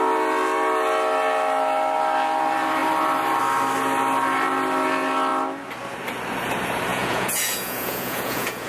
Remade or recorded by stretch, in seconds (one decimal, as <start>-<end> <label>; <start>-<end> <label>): 0.0-6.9 recorded; 6.9-8.7 remade